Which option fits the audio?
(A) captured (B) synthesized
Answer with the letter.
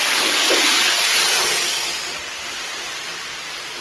A